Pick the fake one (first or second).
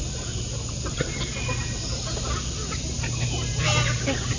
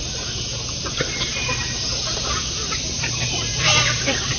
second